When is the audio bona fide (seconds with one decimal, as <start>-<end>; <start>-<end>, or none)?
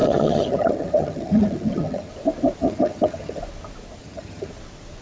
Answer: 2.1-2.6; 3.4-4.0; 4.5-5.0